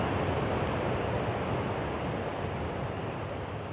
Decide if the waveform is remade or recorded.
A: recorded